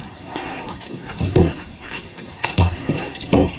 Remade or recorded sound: remade